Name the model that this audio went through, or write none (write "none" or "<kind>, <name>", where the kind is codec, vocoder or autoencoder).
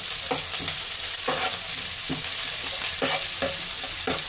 none